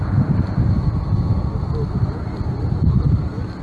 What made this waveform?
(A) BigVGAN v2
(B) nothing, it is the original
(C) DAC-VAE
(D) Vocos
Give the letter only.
B